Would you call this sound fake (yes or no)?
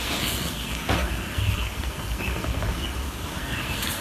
yes